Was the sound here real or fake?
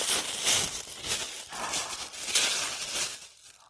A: real